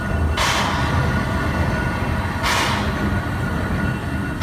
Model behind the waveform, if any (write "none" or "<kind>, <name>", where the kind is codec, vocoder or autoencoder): none